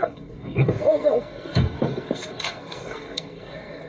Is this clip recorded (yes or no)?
no